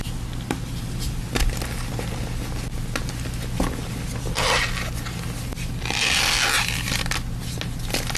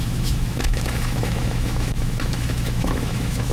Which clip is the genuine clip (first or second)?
first